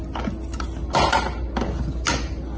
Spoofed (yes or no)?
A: no